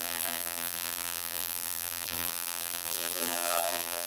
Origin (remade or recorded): remade